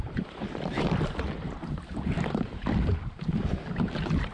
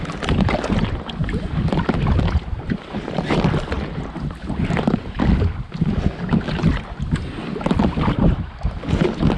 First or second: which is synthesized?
first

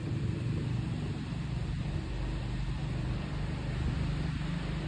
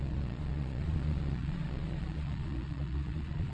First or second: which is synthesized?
second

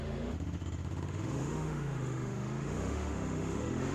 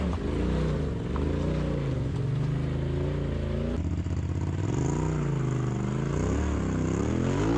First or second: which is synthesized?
first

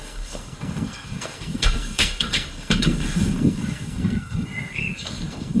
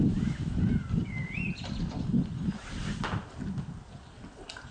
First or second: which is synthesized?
first